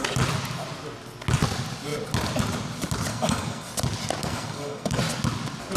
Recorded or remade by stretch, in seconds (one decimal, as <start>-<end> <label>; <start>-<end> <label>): 0.0-3.1 recorded; 3.1-3.7 remade; 3.7-4.2 recorded; 4.2-5.0 remade; 5.0-5.8 recorded